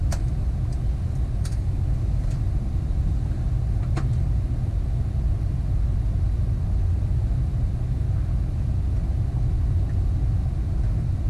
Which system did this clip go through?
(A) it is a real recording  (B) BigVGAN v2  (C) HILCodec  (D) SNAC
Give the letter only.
A